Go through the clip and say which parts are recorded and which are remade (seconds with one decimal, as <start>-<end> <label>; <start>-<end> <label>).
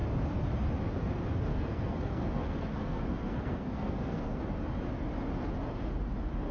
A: 0.0-1.5 recorded; 1.5-4.4 remade; 4.4-6.5 recorded